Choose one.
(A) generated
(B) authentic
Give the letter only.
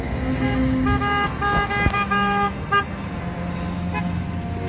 B